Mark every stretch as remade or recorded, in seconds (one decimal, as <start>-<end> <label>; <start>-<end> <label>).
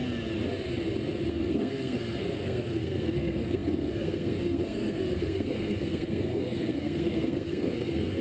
0.0-1.3 recorded; 1.3-8.2 remade